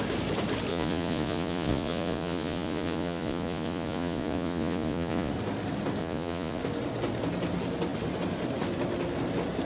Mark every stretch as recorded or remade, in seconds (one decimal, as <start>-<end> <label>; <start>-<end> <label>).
0.0-0.7 recorded; 0.7-5.3 remade; 5.3-6.0 recorded; 6.0-6.6 remade; 6.6-9.6 recorded